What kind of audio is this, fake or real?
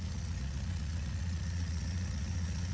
fake